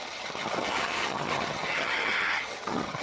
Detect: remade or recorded remade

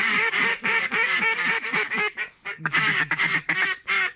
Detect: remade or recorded remade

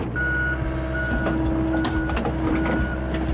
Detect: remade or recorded recorded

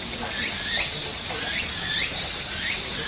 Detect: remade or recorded recorded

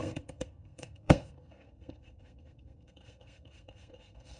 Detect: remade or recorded remade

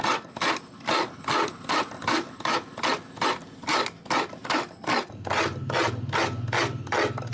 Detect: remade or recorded recorded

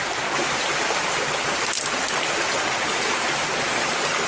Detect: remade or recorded recorded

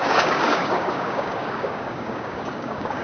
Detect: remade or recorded remade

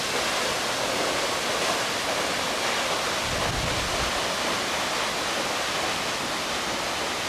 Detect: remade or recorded recorded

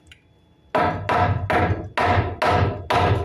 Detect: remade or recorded recorded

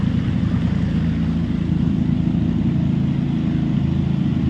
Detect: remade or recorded recorded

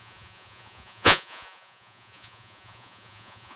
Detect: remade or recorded remade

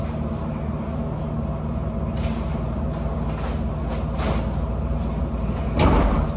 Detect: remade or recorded recorded